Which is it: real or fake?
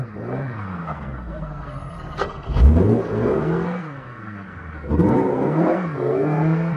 fake